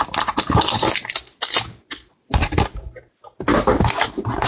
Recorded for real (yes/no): yes